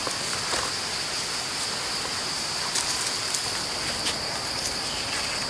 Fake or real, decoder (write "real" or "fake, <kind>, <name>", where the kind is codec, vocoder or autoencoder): real